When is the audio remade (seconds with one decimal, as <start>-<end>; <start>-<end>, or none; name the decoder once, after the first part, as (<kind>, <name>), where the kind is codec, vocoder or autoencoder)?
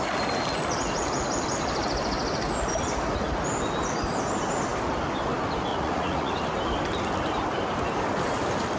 5.7-6.3 (vocoder, Vocos)